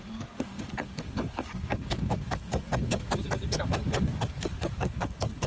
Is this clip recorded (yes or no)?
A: no